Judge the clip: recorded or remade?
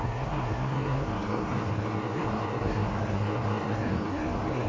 remade